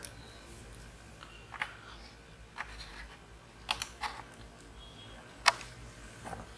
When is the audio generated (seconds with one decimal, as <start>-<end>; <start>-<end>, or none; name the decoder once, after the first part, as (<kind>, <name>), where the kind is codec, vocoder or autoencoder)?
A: none